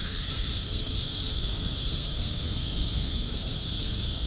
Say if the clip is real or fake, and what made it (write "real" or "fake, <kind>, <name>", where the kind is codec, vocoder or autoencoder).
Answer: fake, codec, SNAC